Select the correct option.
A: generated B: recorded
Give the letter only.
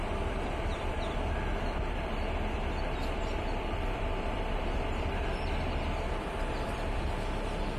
A